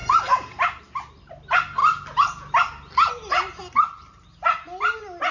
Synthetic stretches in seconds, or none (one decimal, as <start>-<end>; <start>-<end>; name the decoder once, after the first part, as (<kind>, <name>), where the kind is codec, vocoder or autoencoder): none